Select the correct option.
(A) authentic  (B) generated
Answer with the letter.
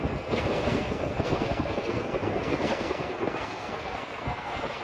B